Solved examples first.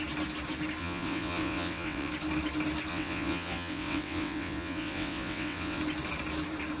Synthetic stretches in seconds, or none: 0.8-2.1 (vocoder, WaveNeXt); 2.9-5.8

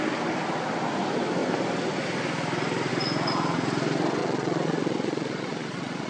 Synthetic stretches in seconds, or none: 4.2-6.1 (vocoder, Vocos)

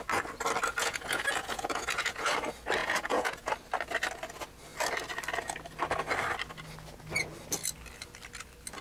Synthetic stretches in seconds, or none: 0.8-2.4 (vocoder, Vocos); 2.8-3.5

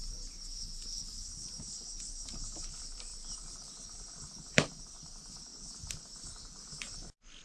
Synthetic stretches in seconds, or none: 0.0-7.4 (vocoder, BigVGAN v2)

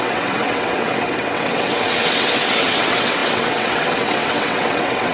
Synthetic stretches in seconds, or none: 0.0-5.1 (vocoder, WaveNeXt)

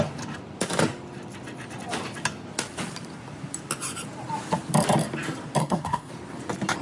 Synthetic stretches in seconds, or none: 5.6-6.1 (codec, SNAC)

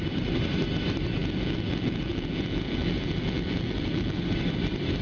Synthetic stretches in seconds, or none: 1.2-4.2 (vocoder, Vocos)